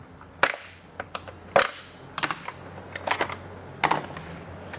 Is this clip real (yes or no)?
yes